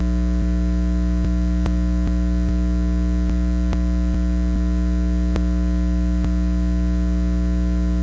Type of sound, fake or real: real